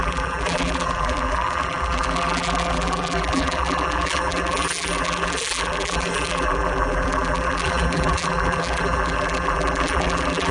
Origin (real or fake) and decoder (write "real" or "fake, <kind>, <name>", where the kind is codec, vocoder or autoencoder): fake, vocoder, BigVGAN v2